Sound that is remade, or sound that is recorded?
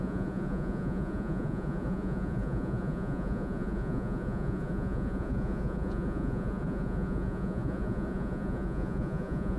remade